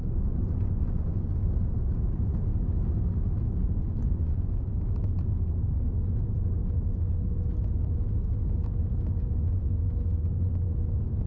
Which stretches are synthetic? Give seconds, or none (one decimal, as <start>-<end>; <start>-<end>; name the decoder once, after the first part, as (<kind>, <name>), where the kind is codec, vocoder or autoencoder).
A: 0.0-1.7 (vocoder, Vocos); 3.6-4.7